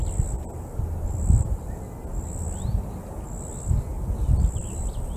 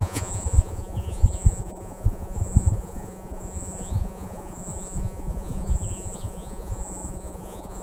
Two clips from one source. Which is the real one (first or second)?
first